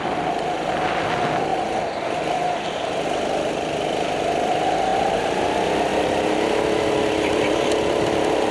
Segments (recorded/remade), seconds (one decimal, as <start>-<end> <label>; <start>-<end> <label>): 0.0-8.5 recorded